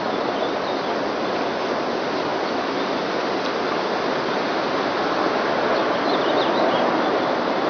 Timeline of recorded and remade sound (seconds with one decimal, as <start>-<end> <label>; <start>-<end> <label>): 0.0-7.7 recorded